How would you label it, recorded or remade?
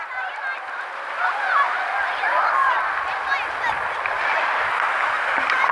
recorded